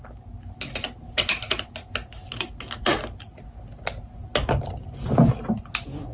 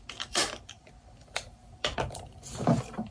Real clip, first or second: first